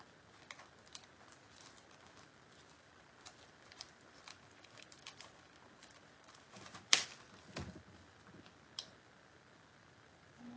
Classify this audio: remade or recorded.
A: recorded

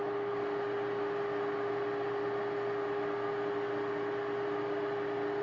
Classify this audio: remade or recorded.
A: recorded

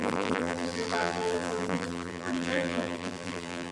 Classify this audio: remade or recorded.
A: remade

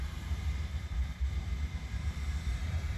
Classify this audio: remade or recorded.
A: remade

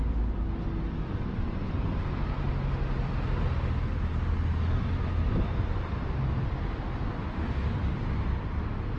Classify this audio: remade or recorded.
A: recorded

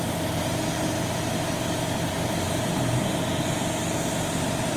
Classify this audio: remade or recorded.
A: recorded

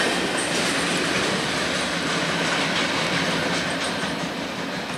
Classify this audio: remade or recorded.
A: recorded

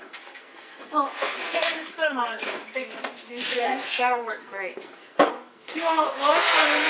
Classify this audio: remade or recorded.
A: remade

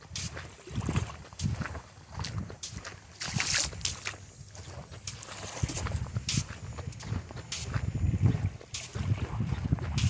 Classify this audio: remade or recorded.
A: recorded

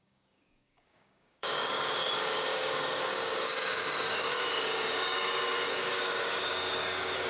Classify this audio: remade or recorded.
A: remade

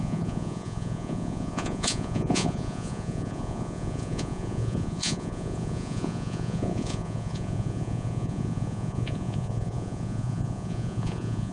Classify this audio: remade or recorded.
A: remade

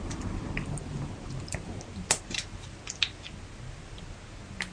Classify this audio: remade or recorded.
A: recorded